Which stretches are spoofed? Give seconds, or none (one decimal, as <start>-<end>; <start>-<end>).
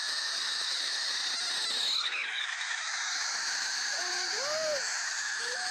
0.0-1.2; 1.8-5.7